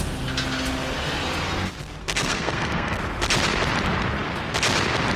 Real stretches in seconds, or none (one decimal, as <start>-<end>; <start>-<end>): 0.0-2.0; 3.0-5.2

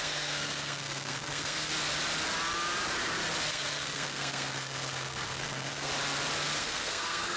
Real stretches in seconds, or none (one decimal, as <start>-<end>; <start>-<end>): 1.7-3.5; 5.9-6.6

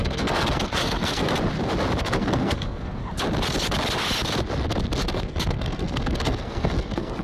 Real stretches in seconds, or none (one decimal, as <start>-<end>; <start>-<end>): 1.3-2.0; 3.0-5.0

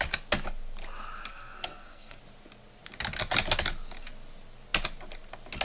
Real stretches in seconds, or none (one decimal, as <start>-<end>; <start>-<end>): 0.0-1.3; 2.2-5.6

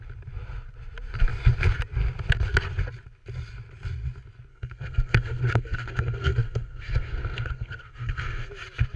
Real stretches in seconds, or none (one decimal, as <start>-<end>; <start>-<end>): 0.0-4.5; 8.5-9.0

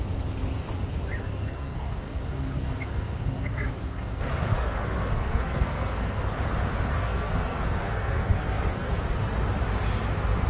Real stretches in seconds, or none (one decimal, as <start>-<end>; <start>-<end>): 0.0-1.2; 6.2-6.9; 9.0-10.5

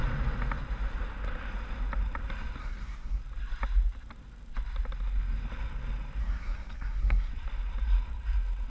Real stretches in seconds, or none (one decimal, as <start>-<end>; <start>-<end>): 0.0-2.6; 3.2-6.2; 7.3-8.7

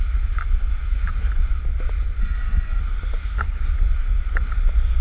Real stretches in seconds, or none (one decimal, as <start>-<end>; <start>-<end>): 0.0-2.2; 2.8-5.0